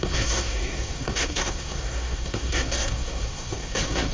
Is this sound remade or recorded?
remade